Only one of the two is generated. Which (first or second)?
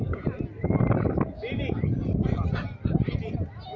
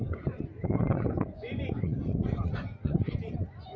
second